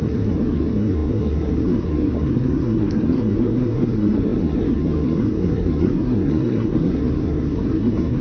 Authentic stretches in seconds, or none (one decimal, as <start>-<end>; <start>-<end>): none